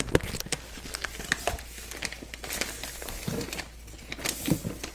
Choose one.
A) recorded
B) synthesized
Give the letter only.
A